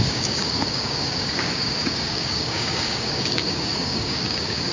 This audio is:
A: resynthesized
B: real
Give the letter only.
A